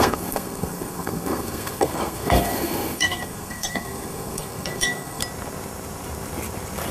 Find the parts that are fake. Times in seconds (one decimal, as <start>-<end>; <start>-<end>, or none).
0.0-5.2